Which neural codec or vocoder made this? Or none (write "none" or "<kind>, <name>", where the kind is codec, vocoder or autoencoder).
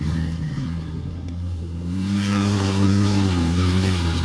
codec, SNAC